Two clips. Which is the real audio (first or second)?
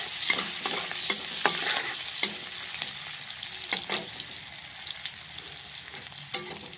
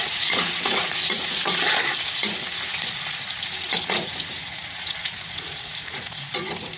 first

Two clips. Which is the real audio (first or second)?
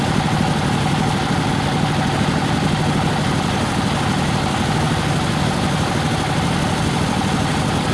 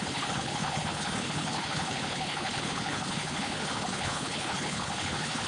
first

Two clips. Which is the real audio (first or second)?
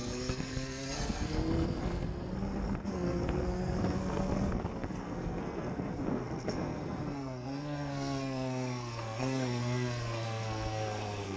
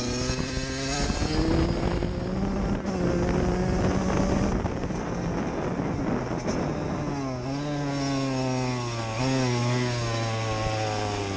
second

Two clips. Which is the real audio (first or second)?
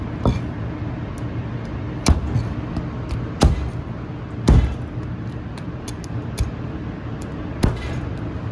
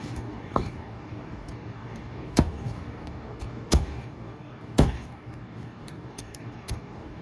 first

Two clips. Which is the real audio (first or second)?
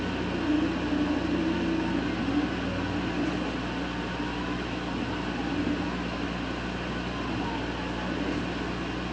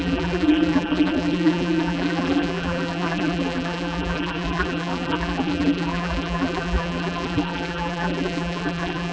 first